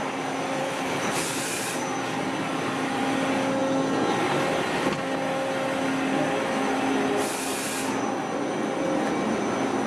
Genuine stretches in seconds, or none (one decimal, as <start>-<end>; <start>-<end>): 0.0-0.6; 1.4-9.9